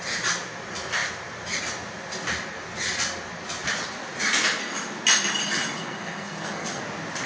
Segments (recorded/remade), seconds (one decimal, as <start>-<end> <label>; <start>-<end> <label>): 0.0-5.8 recorded; 5.8-6.8 remade; 6.8-7.3 recorded